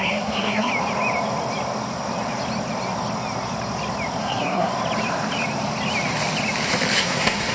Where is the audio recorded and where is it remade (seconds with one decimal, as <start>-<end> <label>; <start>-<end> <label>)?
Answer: 0.0-0.7 remade; 0.7-4.2 recorded; 4.2-4.7 remade; 4.7-7.0 recorded; 7.0-7.5 remade